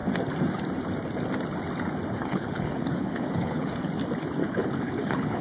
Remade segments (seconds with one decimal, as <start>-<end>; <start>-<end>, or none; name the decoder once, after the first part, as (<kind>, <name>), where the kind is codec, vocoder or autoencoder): 2.1-3.9 (codec, HILCodec); 4.4-5.4